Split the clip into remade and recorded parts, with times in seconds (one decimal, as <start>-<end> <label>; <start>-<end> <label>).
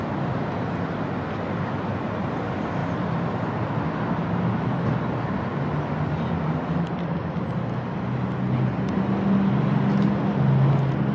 0.0-11.1 recorded